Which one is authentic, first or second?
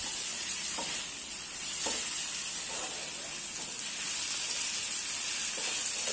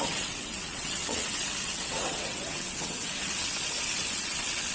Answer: first